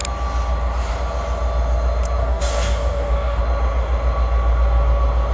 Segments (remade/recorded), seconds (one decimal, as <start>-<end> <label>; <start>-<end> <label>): 0.0-2.2 recorded; 2.2-3.4 remade; 3.4-5.3 recorded